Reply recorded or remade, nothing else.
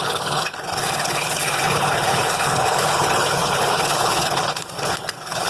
remade